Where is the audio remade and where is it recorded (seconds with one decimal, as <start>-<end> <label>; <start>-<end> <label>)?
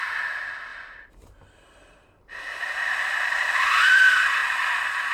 0.0-0.7 recorded; 0.7-3.8 remade; 3.8-5.1 recorded